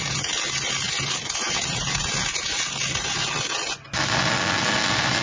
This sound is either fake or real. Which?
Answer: real